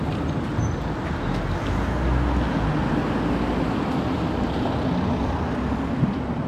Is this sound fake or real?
real